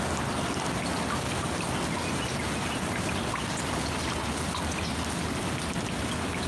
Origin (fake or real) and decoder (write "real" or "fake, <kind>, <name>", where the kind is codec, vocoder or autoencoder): real